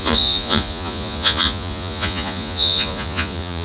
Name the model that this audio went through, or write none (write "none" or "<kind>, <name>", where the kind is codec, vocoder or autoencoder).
vocoder, Vocos